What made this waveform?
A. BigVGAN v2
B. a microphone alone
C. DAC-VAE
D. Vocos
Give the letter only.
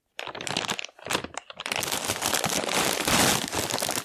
B